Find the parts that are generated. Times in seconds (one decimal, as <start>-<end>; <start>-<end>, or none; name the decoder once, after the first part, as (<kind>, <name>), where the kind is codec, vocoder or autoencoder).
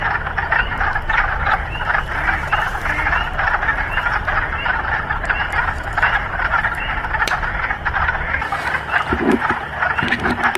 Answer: 3.7-7.2 (vocoder, BigVGAN v2)